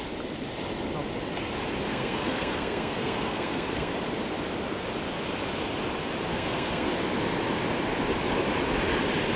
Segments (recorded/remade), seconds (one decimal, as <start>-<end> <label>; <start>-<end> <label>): 0.0-1.9 recorded; 1.9-3.9 remade; 3.9-6.3 recorded; 6.3-6.9 remade; 6.9-9.4 recorded